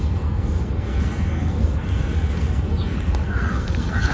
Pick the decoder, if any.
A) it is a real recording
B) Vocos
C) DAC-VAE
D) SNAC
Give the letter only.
D